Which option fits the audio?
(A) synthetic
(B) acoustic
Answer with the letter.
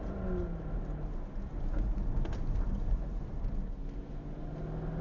B